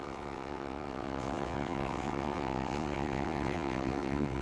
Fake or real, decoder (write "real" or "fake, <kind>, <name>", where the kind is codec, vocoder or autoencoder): fake, vocoder, WaveNeXt